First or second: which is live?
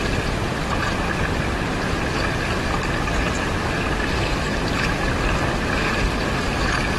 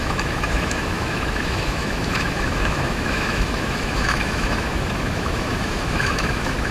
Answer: first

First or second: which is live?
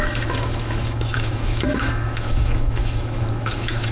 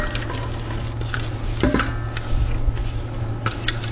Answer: second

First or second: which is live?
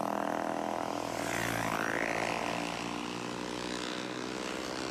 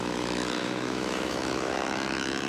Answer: first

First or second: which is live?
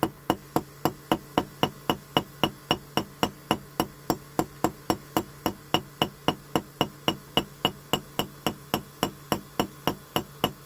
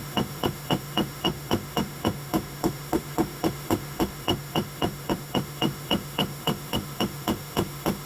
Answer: first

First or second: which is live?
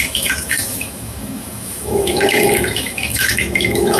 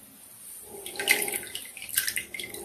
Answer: second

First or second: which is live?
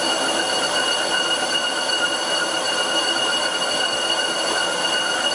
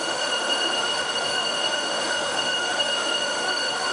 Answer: first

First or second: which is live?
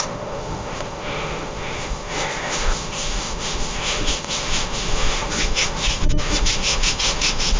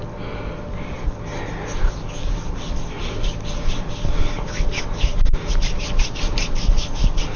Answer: second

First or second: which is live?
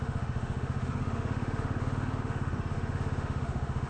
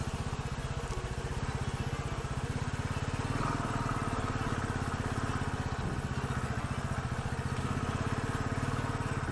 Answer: second